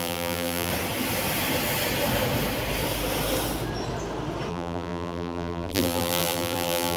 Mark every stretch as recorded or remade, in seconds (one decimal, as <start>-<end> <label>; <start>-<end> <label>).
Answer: 0.0-0.7 remade; 0.7-4.5 recorded; 4.5-7.0 remade